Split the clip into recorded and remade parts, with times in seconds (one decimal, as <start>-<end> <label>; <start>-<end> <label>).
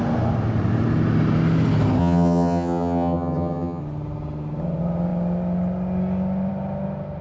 0.0-2.0 recorded; 2.0-3.8 remade; 3.8-7.2 recorded